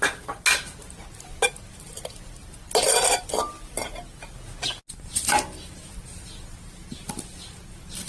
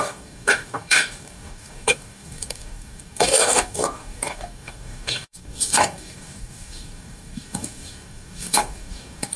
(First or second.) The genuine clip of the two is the first